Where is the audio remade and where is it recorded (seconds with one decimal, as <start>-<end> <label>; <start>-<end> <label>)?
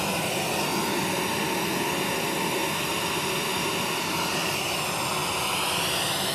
0.0-6.3 recorded